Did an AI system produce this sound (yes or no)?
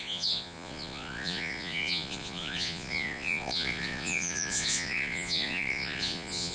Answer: yes